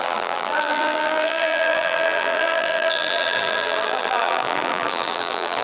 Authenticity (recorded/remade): remade